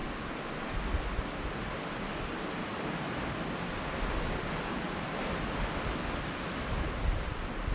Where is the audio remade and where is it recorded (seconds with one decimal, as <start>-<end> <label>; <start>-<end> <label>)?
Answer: 0.0-7.7 recorded